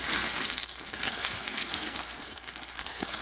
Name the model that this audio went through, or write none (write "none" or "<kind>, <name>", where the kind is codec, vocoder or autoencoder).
codec, SNAC